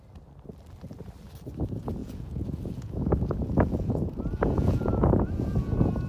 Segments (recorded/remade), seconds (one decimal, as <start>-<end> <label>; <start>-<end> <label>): 0.0-2.0 recorded; 2.0-6.1 remade